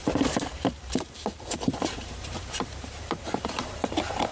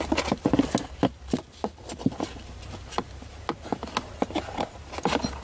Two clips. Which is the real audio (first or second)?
second